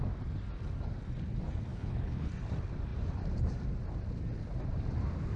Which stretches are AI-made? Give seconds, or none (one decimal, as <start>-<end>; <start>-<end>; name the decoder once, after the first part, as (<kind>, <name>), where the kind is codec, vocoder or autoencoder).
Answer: 1.7-2.3 (codec, HILCodec)